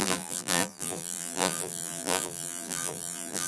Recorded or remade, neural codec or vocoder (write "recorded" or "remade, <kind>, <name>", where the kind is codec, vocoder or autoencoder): remade, vocoder, BigVGAN v2